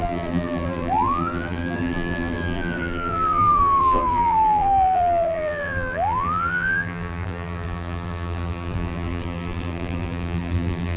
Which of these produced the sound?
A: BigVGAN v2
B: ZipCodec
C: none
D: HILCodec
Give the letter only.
A